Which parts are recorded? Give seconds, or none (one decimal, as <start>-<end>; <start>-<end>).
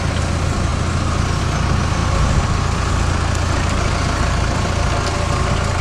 0.0-5.8